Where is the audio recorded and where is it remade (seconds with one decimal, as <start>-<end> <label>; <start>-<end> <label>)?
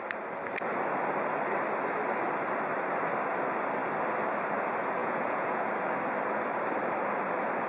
0.0-5.0 recorded; 5.0-5.6 remade; 5.6-7.7 recorded